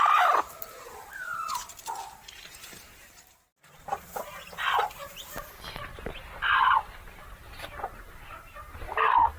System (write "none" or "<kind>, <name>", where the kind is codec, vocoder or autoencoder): vocoder, BigVGAN v2